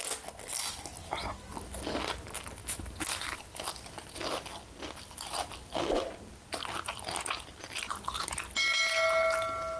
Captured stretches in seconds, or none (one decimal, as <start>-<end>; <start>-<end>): 0.0-2.6; 3.4-9.8